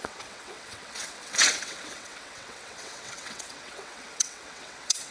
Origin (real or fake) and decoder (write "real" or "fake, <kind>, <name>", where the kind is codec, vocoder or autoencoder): fake, vocoder, WaveNeXt